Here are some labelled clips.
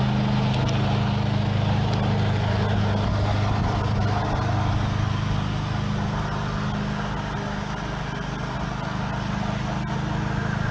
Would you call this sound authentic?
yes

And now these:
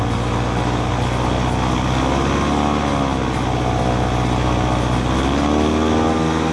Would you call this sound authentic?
yes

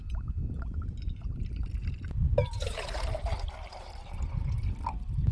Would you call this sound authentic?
yes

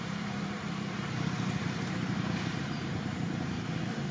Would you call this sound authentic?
no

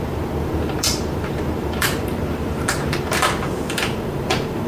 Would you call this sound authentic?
no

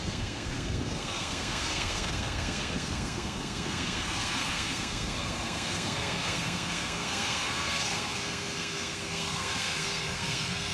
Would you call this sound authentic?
no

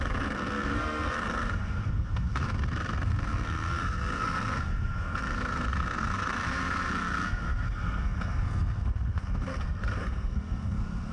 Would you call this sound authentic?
no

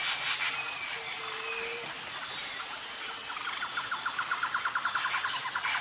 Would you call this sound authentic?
yes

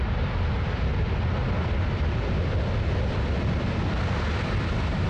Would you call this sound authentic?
yes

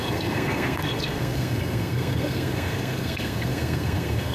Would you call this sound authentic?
no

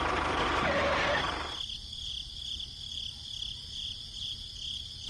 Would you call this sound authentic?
no